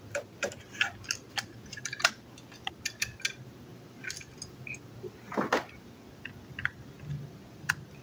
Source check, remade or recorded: recorded